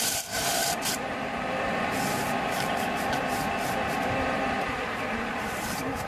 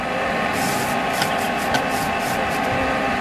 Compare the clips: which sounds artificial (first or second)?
first